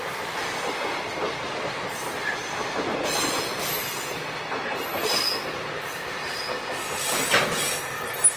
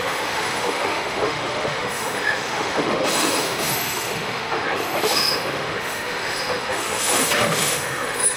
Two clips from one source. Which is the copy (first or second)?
second